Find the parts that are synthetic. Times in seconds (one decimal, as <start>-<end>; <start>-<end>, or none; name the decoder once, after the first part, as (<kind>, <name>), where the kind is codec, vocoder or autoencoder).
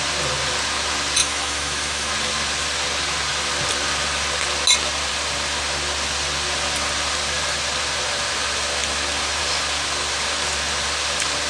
1.2-2.1 (autoencoder, DAC-VAE)